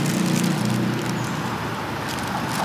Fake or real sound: real